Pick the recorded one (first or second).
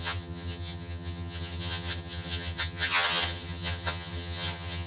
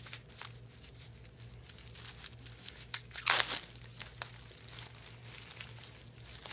second